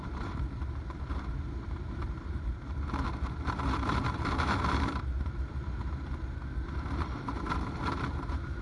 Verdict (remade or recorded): remade